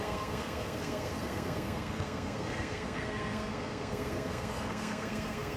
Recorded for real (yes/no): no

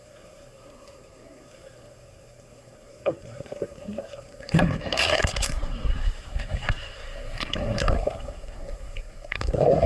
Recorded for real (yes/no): no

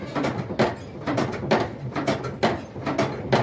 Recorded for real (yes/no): yes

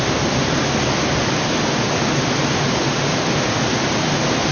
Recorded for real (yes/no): yes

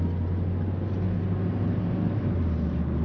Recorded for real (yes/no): yes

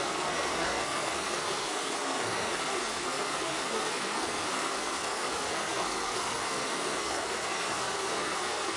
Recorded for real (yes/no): no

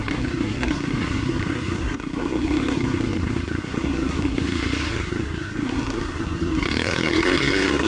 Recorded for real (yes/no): no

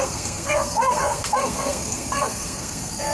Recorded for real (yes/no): no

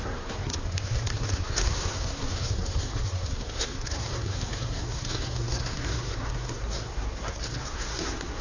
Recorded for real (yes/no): no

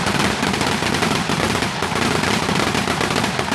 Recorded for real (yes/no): yes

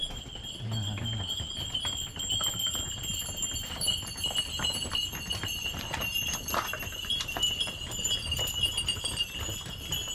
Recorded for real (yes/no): yes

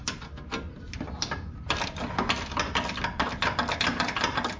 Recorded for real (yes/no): yes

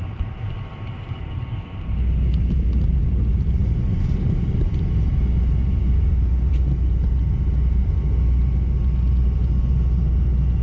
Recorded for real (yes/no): yes